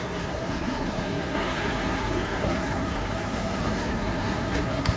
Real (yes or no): no